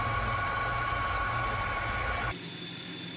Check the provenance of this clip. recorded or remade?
recorded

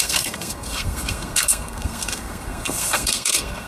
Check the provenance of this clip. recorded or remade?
remade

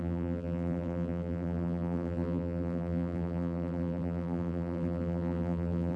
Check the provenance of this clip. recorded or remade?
remade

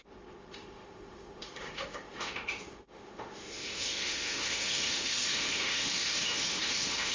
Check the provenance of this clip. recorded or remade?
remade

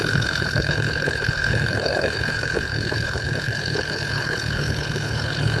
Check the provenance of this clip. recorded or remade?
remade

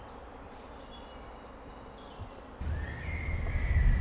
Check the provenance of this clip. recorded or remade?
recorded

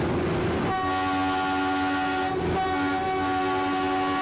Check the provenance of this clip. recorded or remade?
recorded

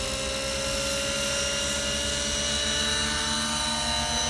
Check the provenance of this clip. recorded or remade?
recorded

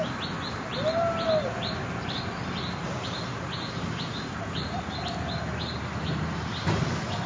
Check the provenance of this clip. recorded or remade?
recorded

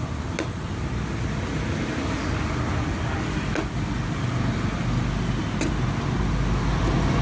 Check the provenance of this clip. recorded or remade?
recorded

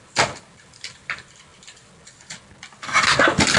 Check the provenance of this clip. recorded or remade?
recorded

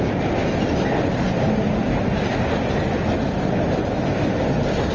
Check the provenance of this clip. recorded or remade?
recorded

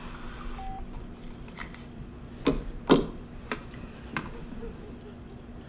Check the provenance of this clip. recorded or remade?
recorded